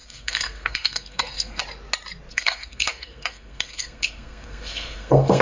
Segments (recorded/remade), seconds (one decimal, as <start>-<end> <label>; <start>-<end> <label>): 0.0-1.6 remade; 1.6-2.3 recorded; 2.3-5.4 remade